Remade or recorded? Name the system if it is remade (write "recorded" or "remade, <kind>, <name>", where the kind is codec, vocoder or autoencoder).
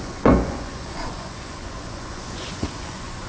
remade, vocoder, Vocos